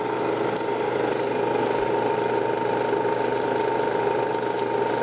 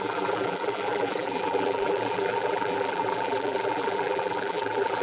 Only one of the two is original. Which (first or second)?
first